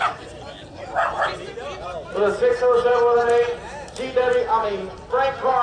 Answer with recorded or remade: recorded